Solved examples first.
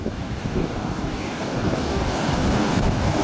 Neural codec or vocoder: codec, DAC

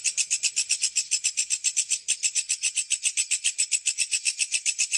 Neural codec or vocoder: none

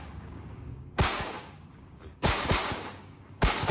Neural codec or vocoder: codec, DAC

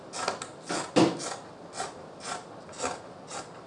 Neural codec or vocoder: none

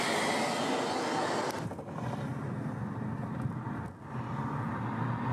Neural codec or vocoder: none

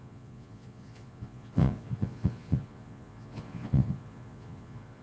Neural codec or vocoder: vocoder, Vocos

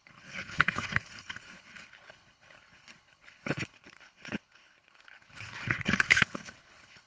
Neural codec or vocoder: codec, HILCodec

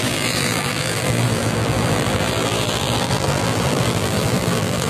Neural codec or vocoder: vocoder, BigVGAN v2